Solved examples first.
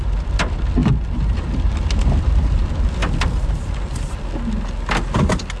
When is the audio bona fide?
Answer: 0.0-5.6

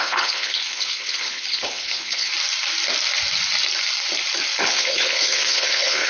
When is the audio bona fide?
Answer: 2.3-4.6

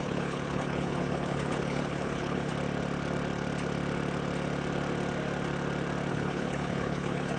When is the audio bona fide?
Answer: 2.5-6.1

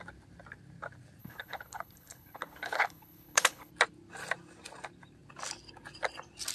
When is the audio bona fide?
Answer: 0.0-1.2; 3.7-6.5